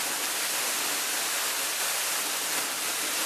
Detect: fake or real real